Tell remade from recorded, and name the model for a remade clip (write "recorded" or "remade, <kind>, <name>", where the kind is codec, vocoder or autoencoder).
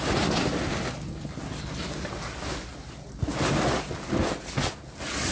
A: recorded